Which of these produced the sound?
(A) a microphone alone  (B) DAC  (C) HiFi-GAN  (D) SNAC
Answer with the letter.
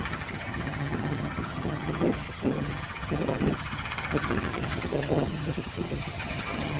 C